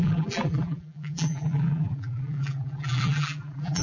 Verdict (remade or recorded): remade